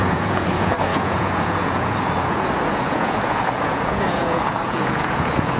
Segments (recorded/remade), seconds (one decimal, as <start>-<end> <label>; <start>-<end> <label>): 0.0-5.6 remade